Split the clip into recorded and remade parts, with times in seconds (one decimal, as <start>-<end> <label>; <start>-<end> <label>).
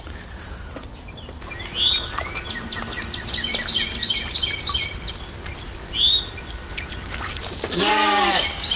0.0-8.8 recorded